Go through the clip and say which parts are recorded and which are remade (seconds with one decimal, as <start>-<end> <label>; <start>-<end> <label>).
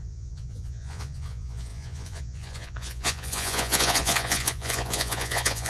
0.0-5.7 remade